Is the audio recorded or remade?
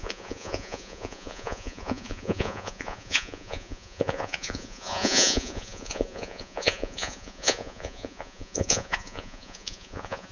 remade